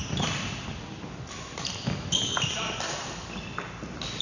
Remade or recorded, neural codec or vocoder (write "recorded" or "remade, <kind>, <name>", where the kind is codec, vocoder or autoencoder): recorded